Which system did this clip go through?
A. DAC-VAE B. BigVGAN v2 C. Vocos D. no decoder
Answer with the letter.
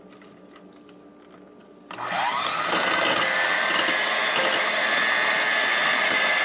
D